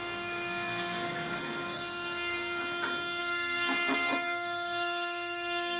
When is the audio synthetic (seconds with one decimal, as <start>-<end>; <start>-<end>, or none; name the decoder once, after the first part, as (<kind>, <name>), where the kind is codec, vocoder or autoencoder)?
0.0-2.6 (codec, SNAC); 3.2-5.8